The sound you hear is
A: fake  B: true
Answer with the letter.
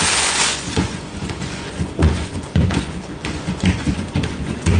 A